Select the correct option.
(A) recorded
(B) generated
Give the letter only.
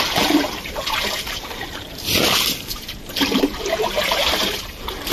B